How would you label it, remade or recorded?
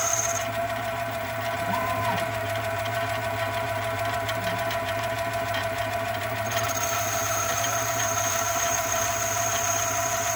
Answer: remade